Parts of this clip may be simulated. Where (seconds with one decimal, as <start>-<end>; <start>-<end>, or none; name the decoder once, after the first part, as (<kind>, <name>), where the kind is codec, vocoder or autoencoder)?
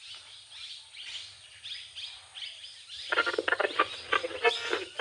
none